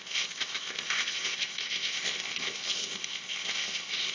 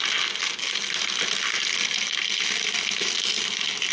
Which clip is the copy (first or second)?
first